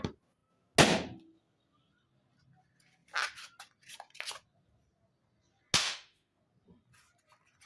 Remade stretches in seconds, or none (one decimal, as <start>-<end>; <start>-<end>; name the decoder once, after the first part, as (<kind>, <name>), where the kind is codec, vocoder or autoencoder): 5.8-6.4 (autoencoder, DAC-VAE)